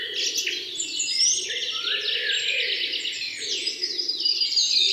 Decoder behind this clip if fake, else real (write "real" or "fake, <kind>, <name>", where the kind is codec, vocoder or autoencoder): real